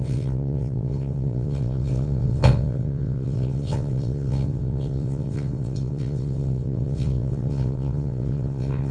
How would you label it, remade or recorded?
remade